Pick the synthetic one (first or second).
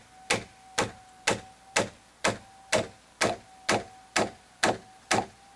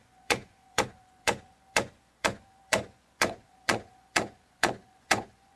second